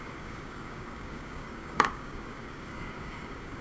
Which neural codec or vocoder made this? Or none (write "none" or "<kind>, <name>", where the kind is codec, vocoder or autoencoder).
codec, DAC